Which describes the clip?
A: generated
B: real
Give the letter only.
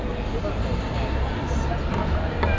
B